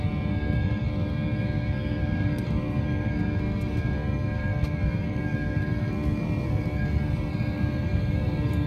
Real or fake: fake